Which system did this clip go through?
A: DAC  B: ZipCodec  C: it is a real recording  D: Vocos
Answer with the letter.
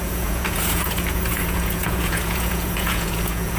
D